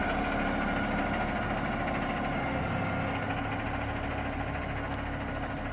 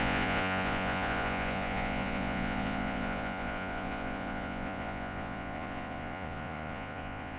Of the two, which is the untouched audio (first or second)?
first